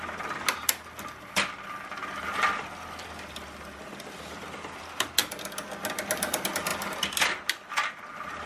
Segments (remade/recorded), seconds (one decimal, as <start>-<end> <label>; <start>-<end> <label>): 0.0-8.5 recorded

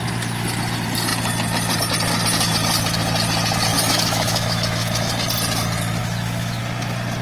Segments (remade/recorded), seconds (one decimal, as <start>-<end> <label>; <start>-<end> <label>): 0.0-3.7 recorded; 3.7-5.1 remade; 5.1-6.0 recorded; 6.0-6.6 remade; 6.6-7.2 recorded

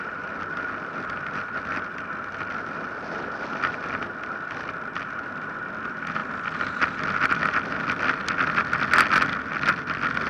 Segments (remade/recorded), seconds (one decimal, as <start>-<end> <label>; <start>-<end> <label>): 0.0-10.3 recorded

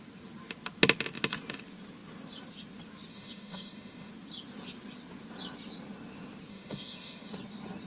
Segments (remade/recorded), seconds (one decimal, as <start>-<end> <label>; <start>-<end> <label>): 0.0-3.1 recorded; 3.1-4.1 remade; 4.1-6.5 recorded; 6.5-7.3 remade; 7.3-7.9 recorded

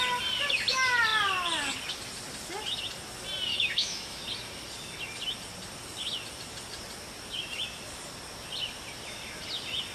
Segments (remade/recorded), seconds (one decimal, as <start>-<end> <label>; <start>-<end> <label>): 0.0-3.5 recorded; 3.5-4.2 remade; 4.2-9.9 recorded

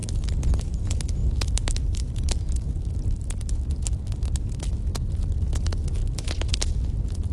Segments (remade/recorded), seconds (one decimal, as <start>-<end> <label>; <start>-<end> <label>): 0.0-7.3 recorded